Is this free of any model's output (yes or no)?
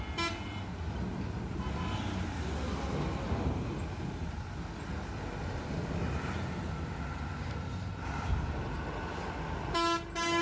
yes